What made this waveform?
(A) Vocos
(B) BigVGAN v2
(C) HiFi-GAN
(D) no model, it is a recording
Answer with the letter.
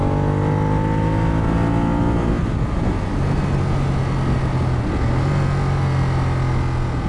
D